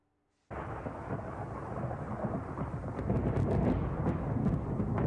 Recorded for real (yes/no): yes